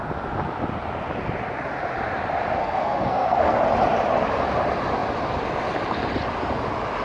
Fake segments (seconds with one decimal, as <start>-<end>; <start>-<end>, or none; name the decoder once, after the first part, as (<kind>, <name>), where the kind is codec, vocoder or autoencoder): 2.6-3.6 (codec, SNAC)

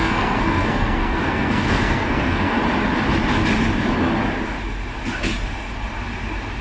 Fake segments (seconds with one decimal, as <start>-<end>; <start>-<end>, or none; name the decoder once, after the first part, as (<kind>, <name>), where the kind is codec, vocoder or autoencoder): 0.0-2.6 (codec, SNAC)

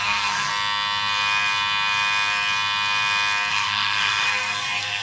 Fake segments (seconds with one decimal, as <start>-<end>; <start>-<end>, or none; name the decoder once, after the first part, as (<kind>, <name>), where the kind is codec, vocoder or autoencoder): 0.0-0.5 (codec, SNAC); 3.5-5.0